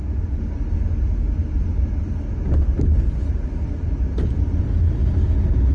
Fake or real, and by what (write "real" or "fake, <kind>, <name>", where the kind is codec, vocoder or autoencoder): real